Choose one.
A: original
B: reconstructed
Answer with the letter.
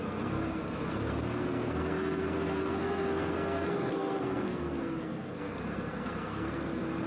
B